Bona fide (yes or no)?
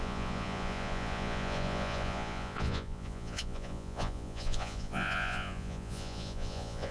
no